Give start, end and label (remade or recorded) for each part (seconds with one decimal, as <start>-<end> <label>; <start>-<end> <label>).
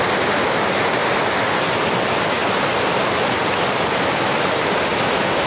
0.0-5.5 recorded